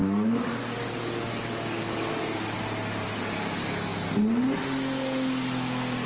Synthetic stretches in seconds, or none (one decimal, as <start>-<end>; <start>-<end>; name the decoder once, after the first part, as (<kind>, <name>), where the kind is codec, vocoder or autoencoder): 0.0-2.1 (codec, DAC)